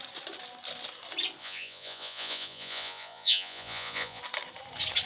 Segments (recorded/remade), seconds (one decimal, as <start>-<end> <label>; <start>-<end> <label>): 0.0-1.4 recorded; 1.4-4.2 remade; 4.2-5.1 recorded